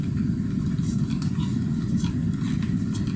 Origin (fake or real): real